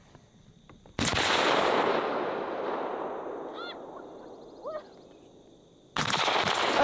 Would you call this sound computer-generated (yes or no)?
no